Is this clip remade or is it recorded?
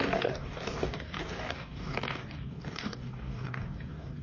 remade